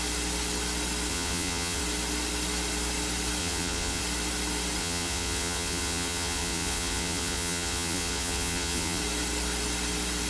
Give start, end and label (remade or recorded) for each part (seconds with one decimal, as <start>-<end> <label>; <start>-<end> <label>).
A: 0.0-1.1 recorded; 1.1-1.8 remade; 1.8-3.4 recorded; 3.4-4.0 remade; 4.0-4.8 recorded; 4.8-9.0 remade; 9.0-10.3 recorded